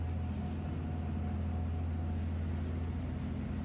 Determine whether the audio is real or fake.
real